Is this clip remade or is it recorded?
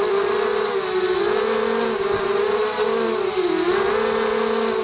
recorded